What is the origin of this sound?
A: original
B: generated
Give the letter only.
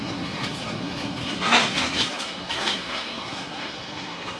B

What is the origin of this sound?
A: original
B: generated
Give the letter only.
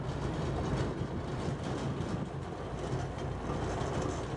A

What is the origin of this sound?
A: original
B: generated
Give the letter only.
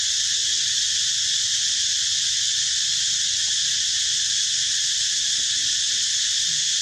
A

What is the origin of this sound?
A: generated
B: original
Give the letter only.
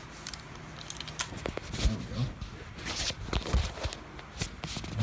B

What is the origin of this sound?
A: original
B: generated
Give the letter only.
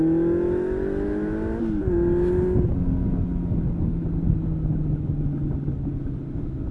A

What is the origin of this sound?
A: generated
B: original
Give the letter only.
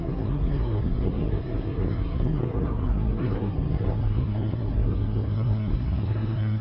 A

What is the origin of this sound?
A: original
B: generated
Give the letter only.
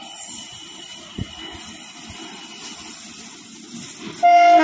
A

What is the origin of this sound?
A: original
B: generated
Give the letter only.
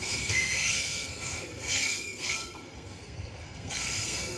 B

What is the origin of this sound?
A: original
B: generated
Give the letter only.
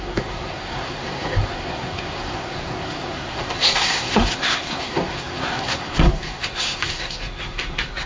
B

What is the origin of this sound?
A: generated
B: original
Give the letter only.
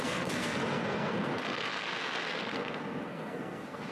A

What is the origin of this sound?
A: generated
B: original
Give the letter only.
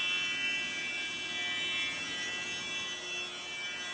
B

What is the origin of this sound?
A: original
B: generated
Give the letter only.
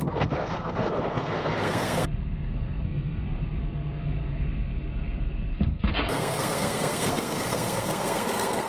B